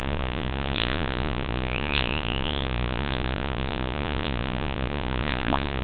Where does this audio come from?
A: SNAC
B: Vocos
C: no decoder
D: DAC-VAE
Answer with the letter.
B